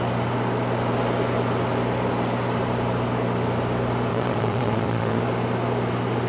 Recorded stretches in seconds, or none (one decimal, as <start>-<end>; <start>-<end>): 0.0-4.1; 5.2-6.3